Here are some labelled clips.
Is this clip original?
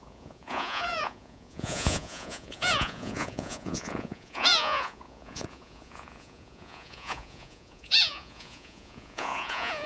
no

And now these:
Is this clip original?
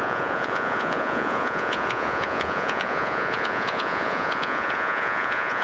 no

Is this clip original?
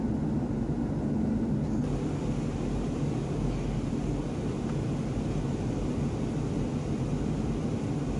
yes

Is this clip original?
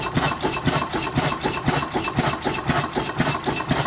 yes